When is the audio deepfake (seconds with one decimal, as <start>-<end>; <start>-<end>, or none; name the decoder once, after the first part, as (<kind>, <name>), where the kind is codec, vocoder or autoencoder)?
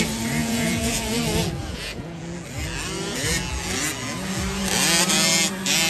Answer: 0.4-1.2 (vocoder, Vocos); 1.6-2.2